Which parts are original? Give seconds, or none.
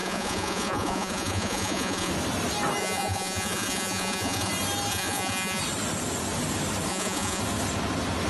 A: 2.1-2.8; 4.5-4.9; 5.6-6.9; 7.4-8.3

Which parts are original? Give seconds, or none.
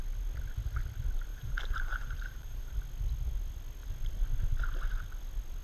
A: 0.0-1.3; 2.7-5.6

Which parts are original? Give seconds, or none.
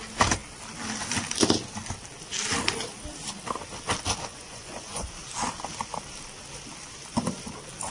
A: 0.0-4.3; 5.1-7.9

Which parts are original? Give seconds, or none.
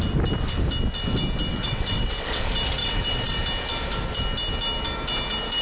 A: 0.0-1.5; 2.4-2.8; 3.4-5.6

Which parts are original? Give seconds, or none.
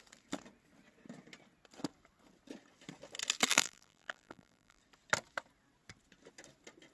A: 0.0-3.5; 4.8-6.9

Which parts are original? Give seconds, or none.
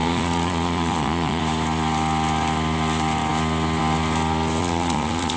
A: 1.4-4.6